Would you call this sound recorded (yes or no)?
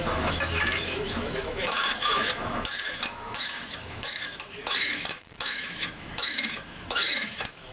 no